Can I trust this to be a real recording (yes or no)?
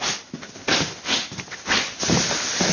yes